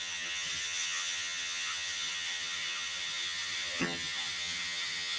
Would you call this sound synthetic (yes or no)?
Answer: yes